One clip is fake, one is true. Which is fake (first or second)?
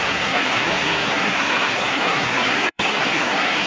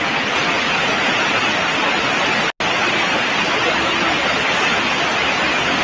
first